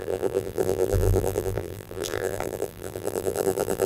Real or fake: fake